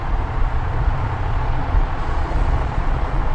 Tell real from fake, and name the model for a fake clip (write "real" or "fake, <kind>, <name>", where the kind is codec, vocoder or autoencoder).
fake, vocoder, Vocos